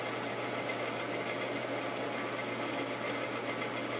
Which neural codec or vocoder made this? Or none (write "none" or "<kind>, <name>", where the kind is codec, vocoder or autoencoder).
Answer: none